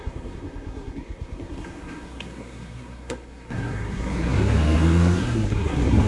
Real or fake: fake